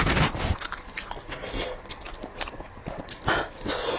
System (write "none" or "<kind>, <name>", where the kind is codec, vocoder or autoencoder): none